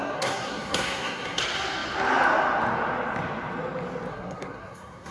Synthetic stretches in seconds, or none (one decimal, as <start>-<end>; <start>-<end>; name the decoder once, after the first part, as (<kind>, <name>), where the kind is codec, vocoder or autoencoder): 0.0-1.4 (codec, SNAC); 4.1-5.1